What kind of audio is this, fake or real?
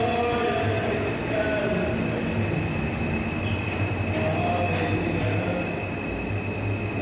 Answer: real